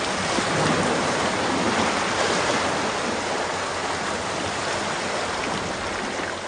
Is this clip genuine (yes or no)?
yes